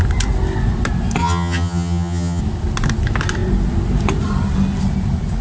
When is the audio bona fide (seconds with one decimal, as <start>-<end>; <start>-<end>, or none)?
0.0-1.2; 2.4-5.4